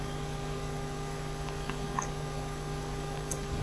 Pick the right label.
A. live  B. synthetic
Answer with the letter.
B